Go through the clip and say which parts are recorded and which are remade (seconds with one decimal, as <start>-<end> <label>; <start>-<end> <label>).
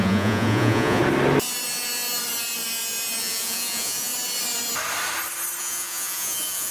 0.0-1.0 remade; 1.0-3.2 recorded; 3.2-4.1 remade; 4.1-5.6 recorded; 5.6-6.7 remade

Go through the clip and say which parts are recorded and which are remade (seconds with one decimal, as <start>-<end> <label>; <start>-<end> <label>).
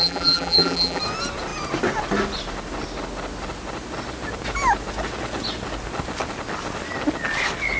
0.0-1.0 remade; 1.0-7.8 recorded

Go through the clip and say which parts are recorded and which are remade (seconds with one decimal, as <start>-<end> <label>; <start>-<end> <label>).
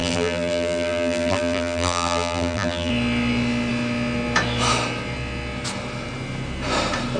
0.0-2.9 remade; 2.9-7.2 recorded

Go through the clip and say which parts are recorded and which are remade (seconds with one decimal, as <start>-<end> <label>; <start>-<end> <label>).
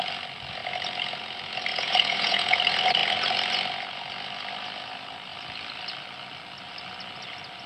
0.0-1.7 recorded; 1.7-2.6 remade; 2.6-7.7 recorded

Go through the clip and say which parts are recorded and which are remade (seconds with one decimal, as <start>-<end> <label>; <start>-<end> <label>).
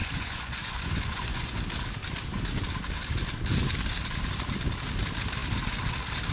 0.0-1.6 remade; 1.6-6.3 recorded